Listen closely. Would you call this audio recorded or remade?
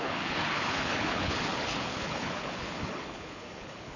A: remade